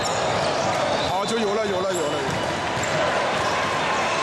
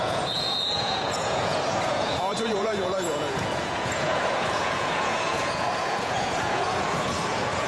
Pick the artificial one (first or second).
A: second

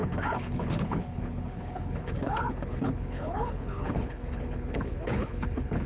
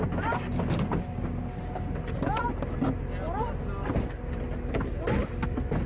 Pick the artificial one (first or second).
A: first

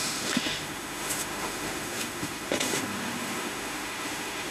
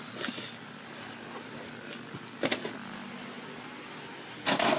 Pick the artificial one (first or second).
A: first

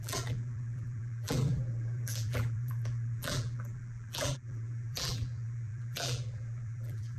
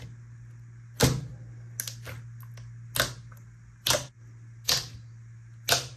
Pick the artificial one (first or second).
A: first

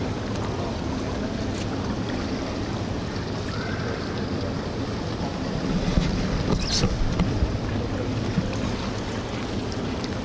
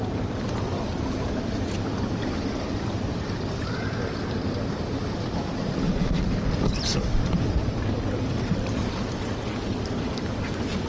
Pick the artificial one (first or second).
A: second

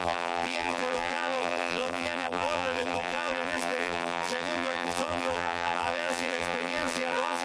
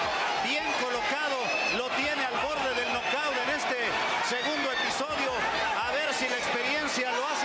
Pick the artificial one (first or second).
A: first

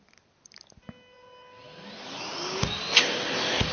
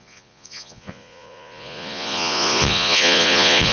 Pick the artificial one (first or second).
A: second